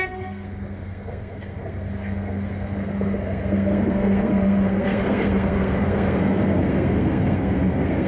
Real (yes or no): no